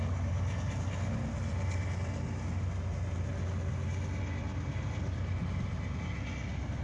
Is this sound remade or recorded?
recorded